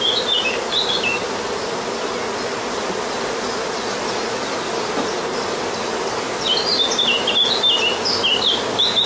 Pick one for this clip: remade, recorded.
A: recorded